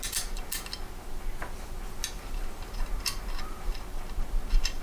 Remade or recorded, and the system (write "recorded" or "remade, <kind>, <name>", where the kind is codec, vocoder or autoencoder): recorded